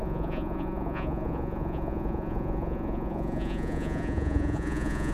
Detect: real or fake fake